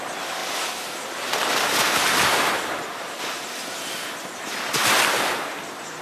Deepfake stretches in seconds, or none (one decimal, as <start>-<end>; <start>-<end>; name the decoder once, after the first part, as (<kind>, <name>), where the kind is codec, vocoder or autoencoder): 0.4-3.2 (vocoder, BigVGAN v2)